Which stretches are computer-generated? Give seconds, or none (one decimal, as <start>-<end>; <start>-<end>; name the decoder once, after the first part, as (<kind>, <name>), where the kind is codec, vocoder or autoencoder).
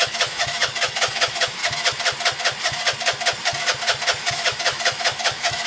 0.0-1.6 (autoencoder, DAC-VAE); 4.3-5.7